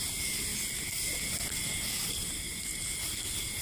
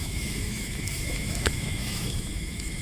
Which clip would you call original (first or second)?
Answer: first